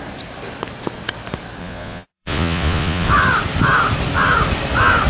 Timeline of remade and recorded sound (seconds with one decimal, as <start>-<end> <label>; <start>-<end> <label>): 0.0-1.6 recorded; 1.6-3.1 remade; 3.1-5.1 recorded